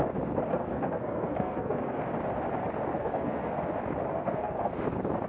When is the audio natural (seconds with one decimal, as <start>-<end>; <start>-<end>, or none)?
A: 0.0-0.5; 2.0-2.9; 3.5-4.1; 4.7-5.3